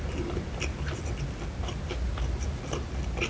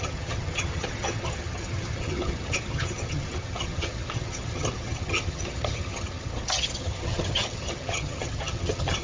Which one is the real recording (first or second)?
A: first